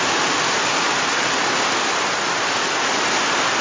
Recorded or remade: recorded